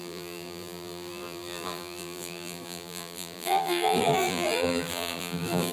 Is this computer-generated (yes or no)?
yes